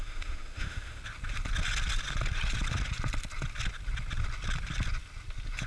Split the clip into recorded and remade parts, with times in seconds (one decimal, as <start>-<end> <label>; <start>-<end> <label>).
0.0-1.0 remade; 1.0-5.7 recorded